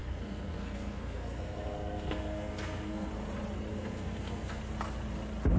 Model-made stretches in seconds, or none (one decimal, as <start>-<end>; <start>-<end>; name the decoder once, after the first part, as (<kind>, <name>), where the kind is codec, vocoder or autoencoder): 0.0-3.1 (codec, SNAC); 3.7-4.6